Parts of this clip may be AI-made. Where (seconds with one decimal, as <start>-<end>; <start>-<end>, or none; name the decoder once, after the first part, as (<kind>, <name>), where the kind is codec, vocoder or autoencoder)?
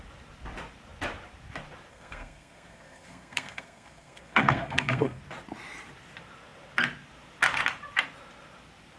1.9-5.2 (codec, SNAC)